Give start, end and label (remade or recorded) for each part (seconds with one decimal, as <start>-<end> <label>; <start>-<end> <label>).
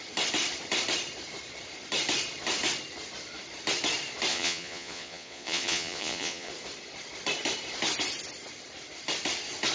0.0-4.3 recorded; 4.3-6.5 remade; 6.5-9.7 recorded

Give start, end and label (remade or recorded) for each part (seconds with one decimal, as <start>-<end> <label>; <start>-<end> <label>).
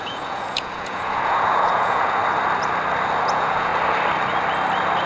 0.0-2.2 remade; 2.2-3.3 recorded; 3.3-3.7 remade; 3.7-5.1 recorded